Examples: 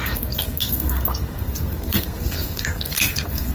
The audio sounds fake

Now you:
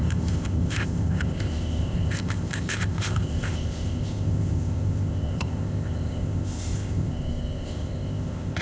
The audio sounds fake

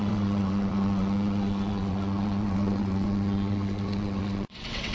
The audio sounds fake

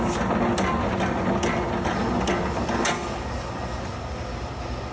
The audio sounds real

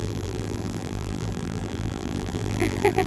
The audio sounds fake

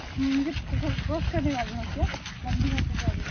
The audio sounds real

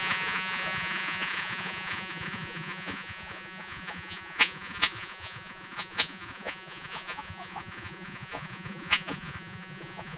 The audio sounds fake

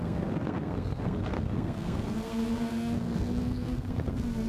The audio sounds fake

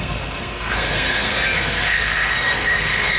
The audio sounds fake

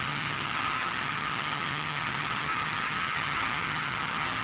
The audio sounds fake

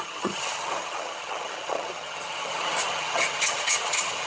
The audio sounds fake